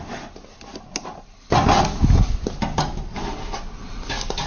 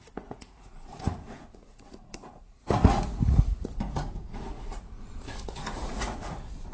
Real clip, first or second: first